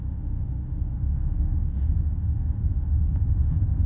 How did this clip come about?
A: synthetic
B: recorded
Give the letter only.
A